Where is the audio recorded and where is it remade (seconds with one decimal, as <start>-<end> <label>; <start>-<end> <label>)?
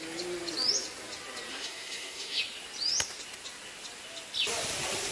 0.0-1.5 recorded; 1.5-2.4 remade; 2.4-5.1 recorded